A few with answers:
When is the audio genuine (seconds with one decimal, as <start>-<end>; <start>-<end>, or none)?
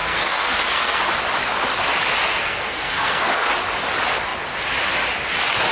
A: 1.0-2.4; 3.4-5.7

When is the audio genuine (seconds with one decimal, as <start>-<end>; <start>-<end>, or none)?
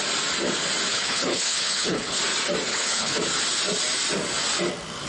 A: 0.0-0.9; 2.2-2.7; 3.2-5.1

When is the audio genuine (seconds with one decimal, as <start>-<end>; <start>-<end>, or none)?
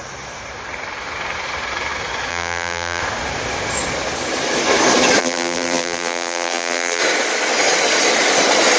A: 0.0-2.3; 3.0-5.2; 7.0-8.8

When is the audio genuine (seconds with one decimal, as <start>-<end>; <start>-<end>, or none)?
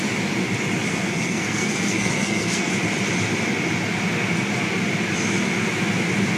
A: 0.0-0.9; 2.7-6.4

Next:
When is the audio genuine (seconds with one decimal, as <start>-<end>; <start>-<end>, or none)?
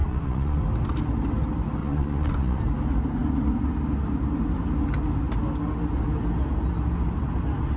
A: 0.6-1.8; 2.6-7.8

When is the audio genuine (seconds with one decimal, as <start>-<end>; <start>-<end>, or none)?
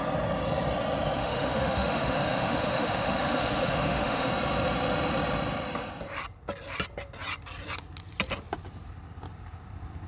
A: 0.0-1.2; 4.3-10.1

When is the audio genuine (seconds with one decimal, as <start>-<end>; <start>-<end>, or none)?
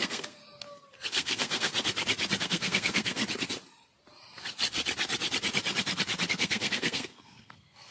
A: 0.4-1.1; 1.7-2.4; 3.2-6.3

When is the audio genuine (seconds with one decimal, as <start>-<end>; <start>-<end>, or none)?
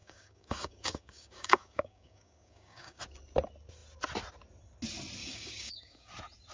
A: 3.0-5.2; 6.1-6.5